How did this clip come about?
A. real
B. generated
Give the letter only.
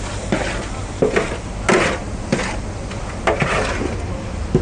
A